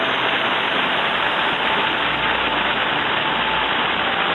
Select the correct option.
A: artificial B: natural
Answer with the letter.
B